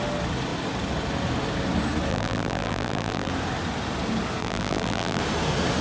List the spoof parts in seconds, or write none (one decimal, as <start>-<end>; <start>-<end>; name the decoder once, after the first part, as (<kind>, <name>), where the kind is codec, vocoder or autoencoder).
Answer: 2.1-3.3 (vocoder, BigVGAN v2); 4.4-5.2